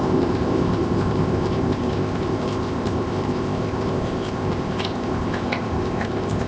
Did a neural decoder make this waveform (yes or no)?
yes